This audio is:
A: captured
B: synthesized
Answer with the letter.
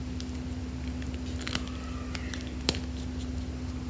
A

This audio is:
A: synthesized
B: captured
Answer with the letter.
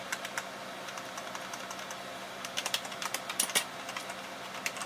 B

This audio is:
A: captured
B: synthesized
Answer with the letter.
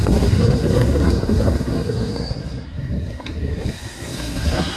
B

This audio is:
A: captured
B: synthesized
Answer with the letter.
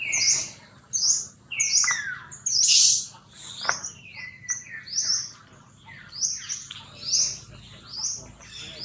A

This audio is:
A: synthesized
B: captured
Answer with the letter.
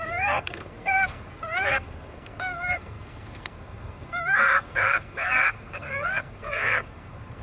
A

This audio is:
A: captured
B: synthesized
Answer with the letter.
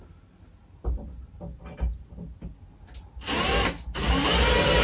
A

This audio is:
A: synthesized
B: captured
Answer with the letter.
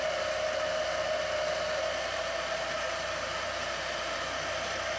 B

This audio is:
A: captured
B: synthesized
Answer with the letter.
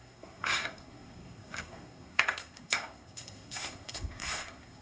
B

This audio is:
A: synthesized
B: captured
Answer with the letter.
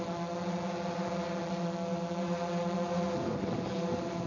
B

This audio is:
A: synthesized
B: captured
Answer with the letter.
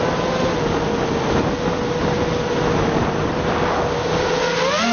B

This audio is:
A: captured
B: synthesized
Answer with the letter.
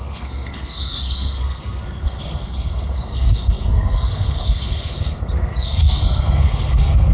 B